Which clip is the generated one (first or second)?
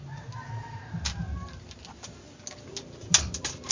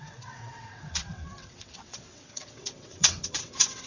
second